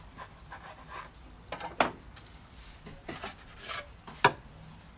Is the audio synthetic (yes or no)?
no